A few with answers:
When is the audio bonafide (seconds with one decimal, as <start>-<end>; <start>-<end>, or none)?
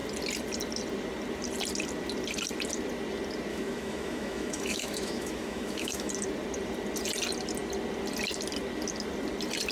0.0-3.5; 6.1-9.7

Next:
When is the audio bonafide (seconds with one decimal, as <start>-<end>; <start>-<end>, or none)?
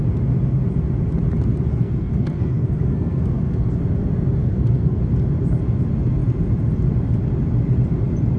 0.0-1.7; 3.7-4.4; 5.0-8.4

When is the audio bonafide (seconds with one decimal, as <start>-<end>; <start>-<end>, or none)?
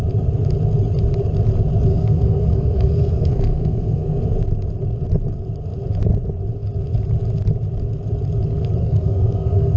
0.0-1.9; 4.2-8.8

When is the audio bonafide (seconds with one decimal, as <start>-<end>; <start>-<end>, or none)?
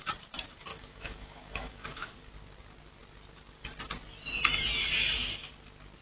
0.0-0.7; 2.1-6.0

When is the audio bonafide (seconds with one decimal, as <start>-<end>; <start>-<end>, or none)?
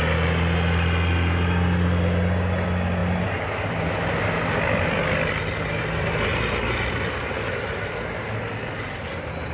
0.0-9.5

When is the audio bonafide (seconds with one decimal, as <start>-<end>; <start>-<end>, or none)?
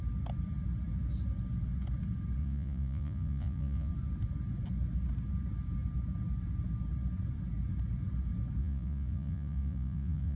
0.0-2.4; 3.9-8.6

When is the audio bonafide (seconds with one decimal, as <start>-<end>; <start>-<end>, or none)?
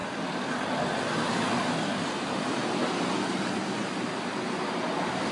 0.0-5.3